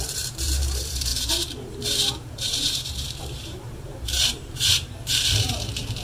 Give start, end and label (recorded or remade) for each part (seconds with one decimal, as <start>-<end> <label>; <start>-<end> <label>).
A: 0.0-6.0 remade